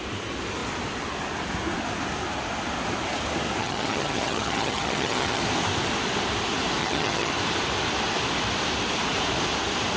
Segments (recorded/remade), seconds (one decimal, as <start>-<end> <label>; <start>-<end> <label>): 0.0-3.6 recorded; 3.6-5.4 remade; 5.4-6.8 recorded; 6.8-7.3 remade; 7.3-10.0 recorded